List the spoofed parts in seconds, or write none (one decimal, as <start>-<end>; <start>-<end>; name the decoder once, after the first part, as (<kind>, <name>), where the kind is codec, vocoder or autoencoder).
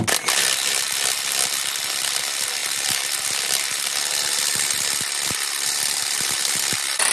none